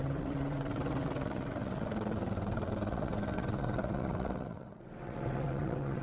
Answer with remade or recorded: remade